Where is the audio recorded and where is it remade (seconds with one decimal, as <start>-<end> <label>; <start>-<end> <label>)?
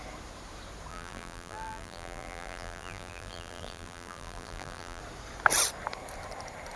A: 0.0-0.9 recorded; 0.9-5.0 remade; 5.0-6.8 recorded